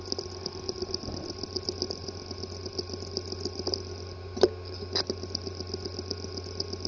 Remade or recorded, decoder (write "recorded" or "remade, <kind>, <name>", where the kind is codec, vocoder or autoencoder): recorded